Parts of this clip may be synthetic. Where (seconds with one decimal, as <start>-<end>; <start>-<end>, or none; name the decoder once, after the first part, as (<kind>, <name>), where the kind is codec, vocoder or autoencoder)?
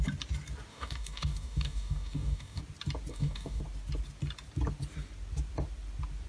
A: 0.7-2.6 (codec, DAC); 3.1-3.6